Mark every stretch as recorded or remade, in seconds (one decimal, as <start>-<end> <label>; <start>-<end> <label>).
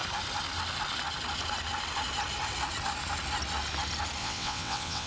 0.0-4.2 recorded; 4.2-5.1 remade